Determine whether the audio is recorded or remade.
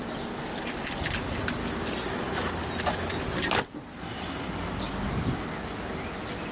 recorded